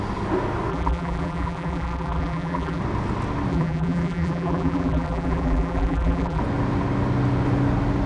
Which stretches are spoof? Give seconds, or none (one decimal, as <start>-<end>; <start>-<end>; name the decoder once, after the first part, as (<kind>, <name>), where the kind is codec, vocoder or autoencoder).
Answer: 0.7-2.8 (vocoder, BigVGAN v2); 3.5-6.4